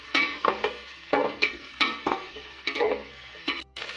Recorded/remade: remade